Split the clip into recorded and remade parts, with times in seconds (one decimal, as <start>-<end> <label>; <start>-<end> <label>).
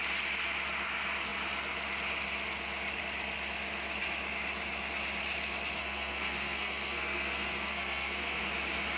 0.0-5.8 recorded; 5.8-8.4 remade; 8.4-9.0 recorded